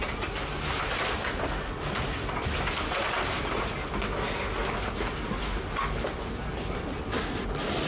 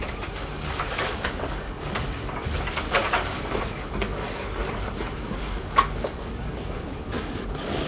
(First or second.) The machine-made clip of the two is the second